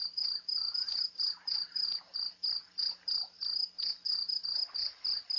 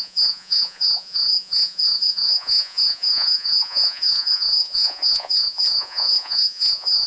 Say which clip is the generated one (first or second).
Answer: second